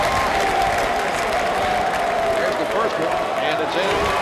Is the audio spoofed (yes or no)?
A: no